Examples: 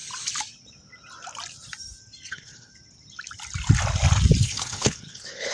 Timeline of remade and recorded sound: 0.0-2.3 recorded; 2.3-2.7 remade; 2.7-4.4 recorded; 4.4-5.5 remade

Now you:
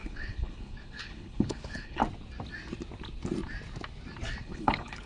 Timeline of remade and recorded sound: 0.0-2.0 remade; 2.0-4.4 recorded; 4.4-5.1 remade

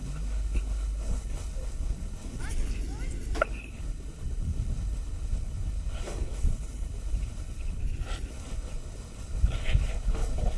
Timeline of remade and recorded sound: 0.0-2.4 remade; 2.4-3.4 recorded; 3.4-7.8 remade; 7.8-8.3 recorded; 8.3-10.6 remade

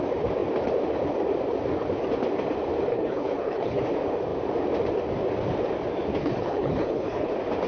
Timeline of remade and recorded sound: 0.0-2.9 recorded; 2.9-3.8 remade; 3.8-6.1 recorded; 6.1-7.3 remade; 7.3-7.7 recorded

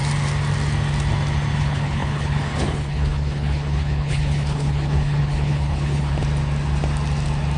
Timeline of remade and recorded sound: 0.0-1.6 recorded; 1.6-6.1 remade; 6.1-7.6 recorded

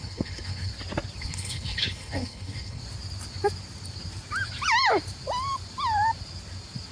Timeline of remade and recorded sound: 0.0-0.7 remade; 0.7-1.2 recorded; 1.2-2.8 remade; 2.8-6.9 recorded